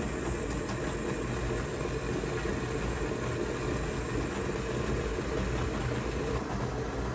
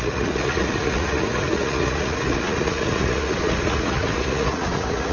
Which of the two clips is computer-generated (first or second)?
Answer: second